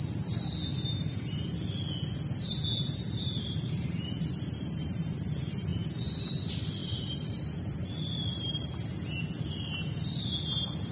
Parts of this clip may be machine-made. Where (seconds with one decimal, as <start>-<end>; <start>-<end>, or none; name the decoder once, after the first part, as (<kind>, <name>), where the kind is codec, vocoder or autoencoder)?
2.4-5.2 (vocoder, BigVGAN v2); 6.8-8.5